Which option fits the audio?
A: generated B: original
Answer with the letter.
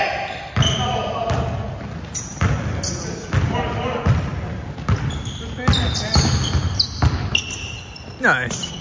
B